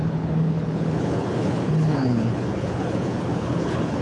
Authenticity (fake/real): fake